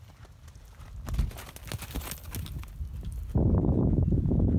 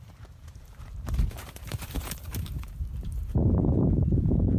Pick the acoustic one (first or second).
first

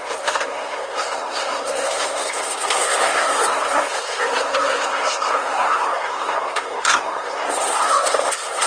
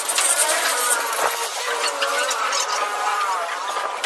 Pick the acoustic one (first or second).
second